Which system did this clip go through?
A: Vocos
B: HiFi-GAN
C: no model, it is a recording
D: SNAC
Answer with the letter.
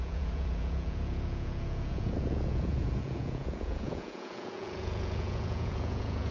A